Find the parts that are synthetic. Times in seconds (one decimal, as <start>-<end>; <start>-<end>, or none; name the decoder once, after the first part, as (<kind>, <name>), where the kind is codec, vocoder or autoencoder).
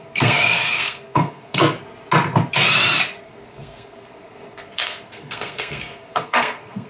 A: 0.0-1.6 (codec, SNAC); 3.2-6.9